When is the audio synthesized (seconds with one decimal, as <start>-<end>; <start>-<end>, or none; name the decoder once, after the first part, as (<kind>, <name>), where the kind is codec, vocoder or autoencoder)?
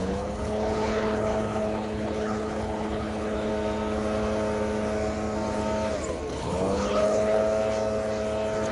0.0-3.5 (codec, HILCodec); 6.4-7.4